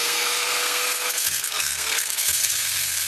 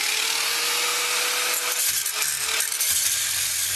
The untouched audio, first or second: second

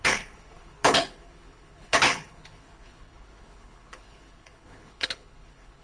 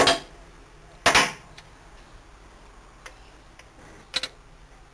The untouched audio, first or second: second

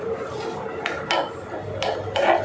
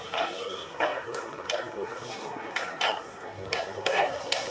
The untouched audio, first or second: first